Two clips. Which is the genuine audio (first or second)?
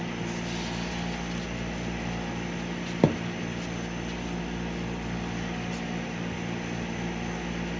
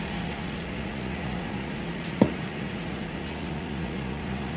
first